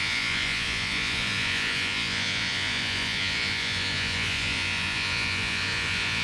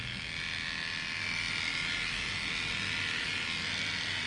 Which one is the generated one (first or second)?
first